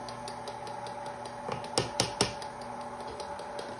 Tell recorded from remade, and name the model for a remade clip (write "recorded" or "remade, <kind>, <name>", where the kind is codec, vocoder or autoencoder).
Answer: recorded